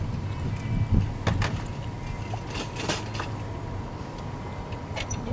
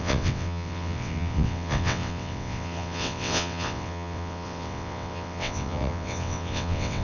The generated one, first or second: second